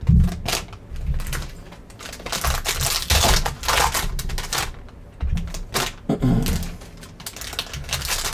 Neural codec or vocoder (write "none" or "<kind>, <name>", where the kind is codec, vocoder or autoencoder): none